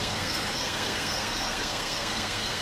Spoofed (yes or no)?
yes